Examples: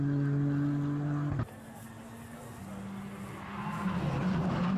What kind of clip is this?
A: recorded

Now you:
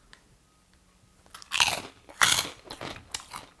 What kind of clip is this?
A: recorded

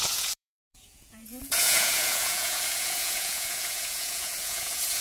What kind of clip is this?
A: remade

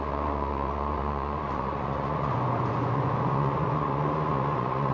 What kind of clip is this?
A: remade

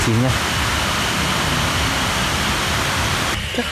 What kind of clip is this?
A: recorded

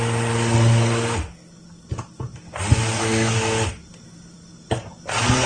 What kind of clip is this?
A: recorded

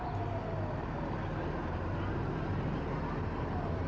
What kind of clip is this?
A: recorded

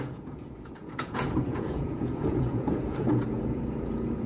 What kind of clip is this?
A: remade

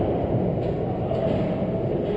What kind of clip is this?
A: recorded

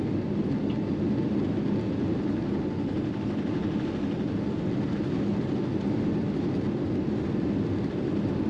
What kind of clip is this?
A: recorded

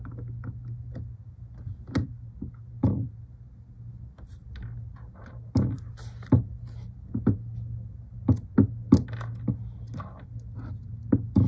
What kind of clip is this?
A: recorded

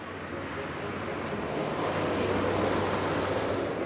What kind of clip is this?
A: recorded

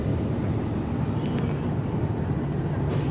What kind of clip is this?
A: recorded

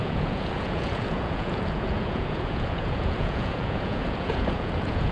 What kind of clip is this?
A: remade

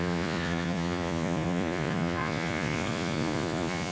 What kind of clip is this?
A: remade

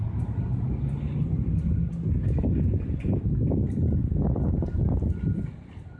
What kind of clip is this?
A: recorded